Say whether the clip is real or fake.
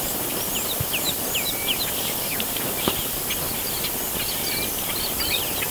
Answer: real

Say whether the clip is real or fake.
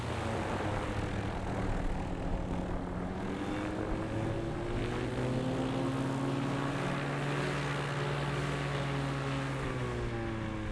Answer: real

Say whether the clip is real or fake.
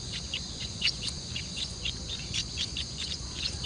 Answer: fake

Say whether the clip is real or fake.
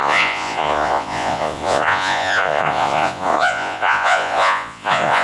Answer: fake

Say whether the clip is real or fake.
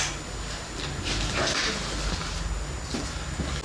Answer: real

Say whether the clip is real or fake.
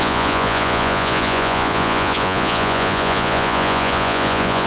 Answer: fake